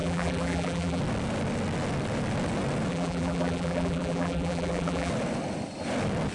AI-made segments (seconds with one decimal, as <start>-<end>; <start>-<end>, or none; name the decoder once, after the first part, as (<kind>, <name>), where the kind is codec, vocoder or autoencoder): 0.0-1.0 (vocoder, BigVGAN v2); 2.9-5.1